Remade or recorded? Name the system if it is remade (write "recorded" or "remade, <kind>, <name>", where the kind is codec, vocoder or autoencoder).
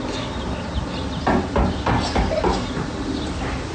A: recorded